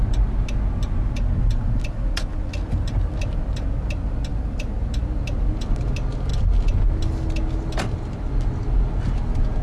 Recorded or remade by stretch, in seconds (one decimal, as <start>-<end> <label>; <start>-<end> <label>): 0.0-9.6 recorded